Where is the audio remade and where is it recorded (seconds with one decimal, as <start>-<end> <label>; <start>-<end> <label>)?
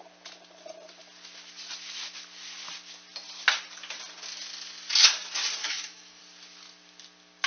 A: 0.0-5.6 recorded; 5.6-6.2 remade; 6.2-7.5 recorded